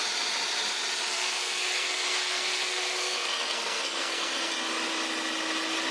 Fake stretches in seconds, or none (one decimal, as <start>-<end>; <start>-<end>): 1.1-4.5